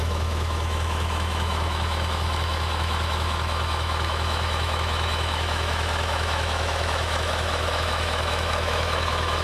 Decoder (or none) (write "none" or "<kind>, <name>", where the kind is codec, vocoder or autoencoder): autoencoder, DAC-VAE